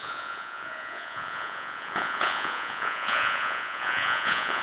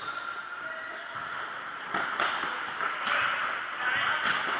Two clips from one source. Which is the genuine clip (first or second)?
second